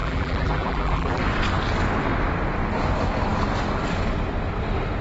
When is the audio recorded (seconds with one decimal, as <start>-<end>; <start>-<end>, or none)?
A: 1.2-5.0